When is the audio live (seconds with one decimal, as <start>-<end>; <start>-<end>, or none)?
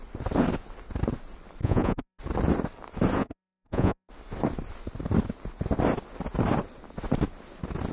0.0-1.6; 2.2-3.2; 4.1-7.9